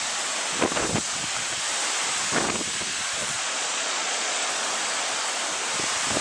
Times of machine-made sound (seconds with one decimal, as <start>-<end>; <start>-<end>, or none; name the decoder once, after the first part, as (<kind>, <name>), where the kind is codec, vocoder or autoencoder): 3.2-4.5 (vocoder, Vocos)